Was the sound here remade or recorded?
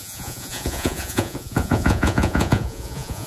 remade